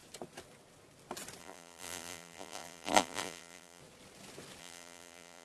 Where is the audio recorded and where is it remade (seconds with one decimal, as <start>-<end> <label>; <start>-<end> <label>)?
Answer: 0.0-1.4 recorded; 1.4-3.8 remade; 3.8-4.6 recorded; 4.6-5.4 remade